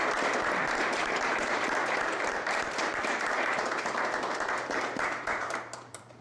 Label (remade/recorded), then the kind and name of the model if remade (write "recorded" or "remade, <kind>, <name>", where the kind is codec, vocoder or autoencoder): remade, vocoder, BigVGAN v2